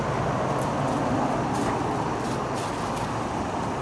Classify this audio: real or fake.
real